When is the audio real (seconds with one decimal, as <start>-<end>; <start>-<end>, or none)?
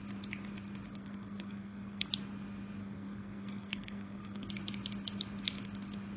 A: 0.0-0.9; 2.1-2.8; 4.5-6.2